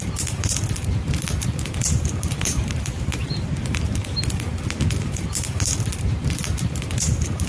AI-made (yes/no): yes